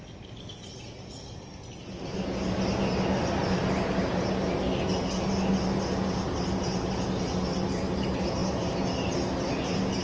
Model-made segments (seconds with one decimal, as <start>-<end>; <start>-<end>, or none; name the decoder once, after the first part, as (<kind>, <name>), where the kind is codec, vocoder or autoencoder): none